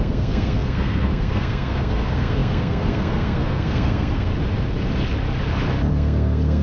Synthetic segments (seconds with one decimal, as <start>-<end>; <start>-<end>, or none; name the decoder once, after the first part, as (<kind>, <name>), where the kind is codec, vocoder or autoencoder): 0.0-4.3 (codec, SNAC); 5.9-6.6

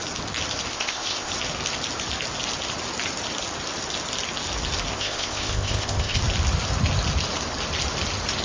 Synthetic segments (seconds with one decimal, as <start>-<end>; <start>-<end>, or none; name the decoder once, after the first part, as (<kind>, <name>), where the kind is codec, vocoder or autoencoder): 0.7-1.3 (codec, ZipCodec); 4.9-6.2

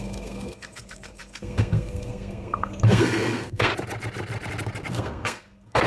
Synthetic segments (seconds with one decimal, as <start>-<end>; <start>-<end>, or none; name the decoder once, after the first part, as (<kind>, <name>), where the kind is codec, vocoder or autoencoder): 0.0-3.7 (codec, SNAC); 4.9-5.9

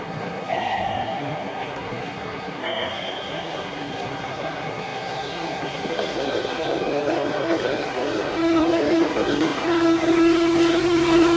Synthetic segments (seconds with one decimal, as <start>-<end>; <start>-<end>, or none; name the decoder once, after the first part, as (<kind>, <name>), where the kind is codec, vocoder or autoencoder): 0.0-11.4 (codec, SNAC)

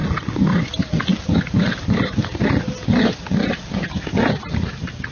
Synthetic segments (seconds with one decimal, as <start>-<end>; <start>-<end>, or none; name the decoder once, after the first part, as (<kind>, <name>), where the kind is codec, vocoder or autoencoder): none

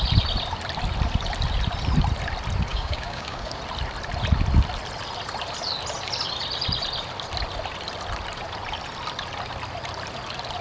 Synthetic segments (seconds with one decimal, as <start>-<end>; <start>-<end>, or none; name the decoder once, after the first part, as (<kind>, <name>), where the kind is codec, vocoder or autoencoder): 2.7-3.6 (codec, DAC)